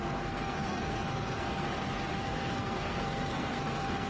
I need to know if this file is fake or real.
fake